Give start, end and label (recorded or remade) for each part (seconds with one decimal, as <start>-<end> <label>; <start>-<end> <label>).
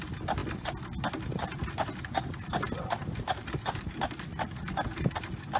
0.0-5.6 recorded